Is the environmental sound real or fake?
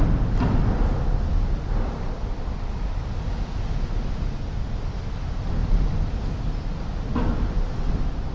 real